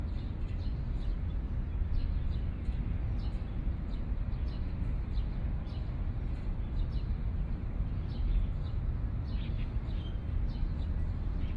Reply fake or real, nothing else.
real